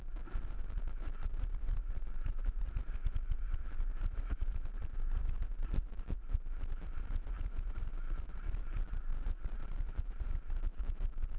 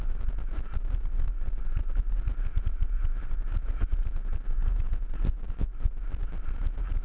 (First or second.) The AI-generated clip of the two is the first